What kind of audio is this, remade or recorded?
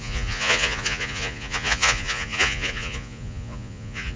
remade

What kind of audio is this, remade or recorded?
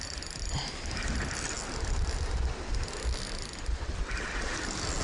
recorded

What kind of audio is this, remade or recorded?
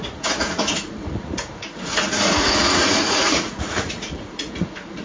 remade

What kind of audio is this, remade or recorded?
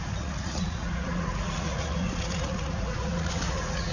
remade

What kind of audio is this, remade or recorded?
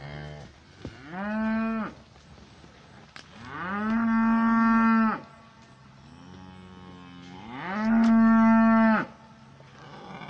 recorded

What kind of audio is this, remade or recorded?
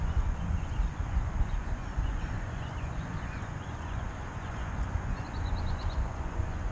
remade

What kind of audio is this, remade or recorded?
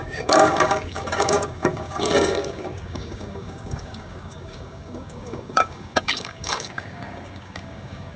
remade